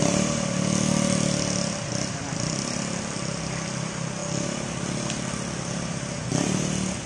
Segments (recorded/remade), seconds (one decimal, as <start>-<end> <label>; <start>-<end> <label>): 0.0-7.1 recorded